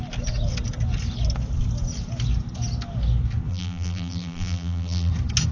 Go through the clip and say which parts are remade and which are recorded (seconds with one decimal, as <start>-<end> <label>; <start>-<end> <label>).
0.0-3.5 recorded; 3.5-5.1 remade; 5.1-5.5 recorded